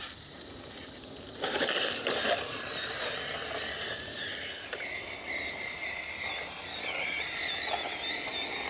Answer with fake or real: real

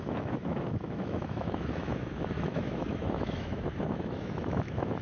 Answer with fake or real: fake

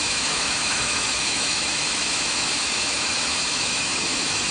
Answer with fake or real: fake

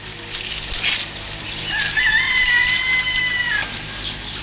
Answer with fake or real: real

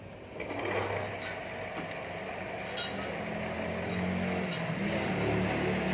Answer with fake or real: real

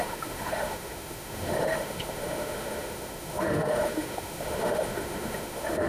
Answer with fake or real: fake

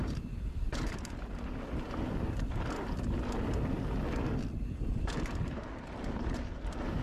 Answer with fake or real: real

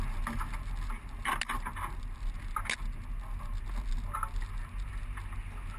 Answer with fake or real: real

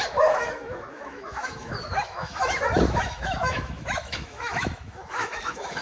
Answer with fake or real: fake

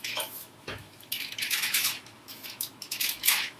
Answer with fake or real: fake